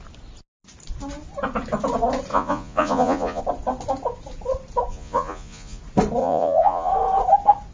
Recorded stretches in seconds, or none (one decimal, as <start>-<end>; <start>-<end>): 0.0-2.3; 3.4-4.9; 5.8-6.2; 6.9-7.7